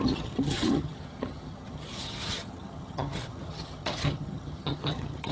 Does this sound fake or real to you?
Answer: fake